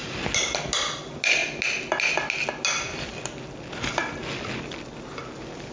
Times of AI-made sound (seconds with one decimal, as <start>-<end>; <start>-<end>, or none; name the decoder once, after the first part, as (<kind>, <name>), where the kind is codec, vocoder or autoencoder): none